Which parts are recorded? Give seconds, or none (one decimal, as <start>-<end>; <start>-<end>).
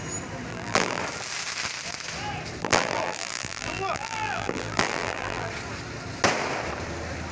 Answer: 0.0-0.5; 1.0-2.6; 5.5-7.3